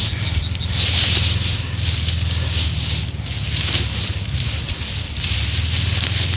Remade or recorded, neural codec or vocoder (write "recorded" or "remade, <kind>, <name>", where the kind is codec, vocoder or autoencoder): recorded